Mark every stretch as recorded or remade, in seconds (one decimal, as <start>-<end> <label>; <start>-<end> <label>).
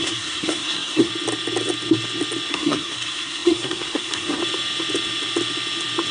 0.0-1.1 remade; 1.1-2.5 recorded; 2.5-4.4 remade; 4.4-6.1 recorded